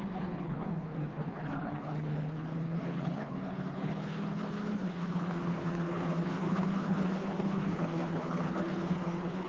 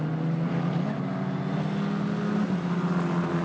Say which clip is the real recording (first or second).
second